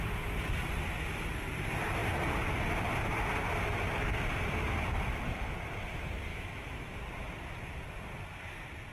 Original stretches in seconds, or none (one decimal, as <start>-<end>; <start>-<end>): 0.0-6.3; 7.0-8.9